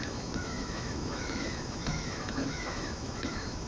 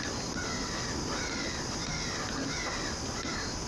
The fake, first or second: first